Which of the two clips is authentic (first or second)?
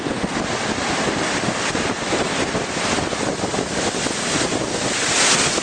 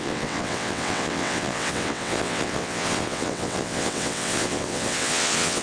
first